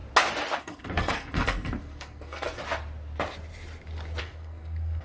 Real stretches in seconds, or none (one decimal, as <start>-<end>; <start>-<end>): 0.0-0.6; 2.6-4.2